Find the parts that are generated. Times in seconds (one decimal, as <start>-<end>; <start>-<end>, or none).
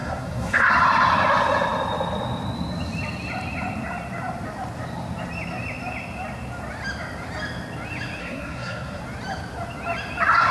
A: 0.0-0.7; 8.2-9.0